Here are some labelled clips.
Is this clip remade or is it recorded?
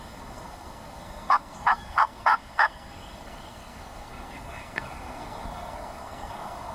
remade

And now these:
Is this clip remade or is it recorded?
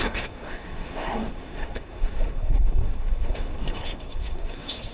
remade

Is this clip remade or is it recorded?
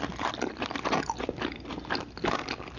recorded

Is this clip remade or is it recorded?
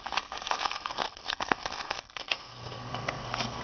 remade